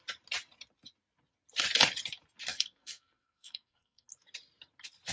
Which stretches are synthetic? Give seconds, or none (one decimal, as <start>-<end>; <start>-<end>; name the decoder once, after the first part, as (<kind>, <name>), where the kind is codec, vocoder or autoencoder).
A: 2.5-4.1 (codec, SNAC)